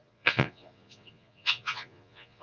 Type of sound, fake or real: fake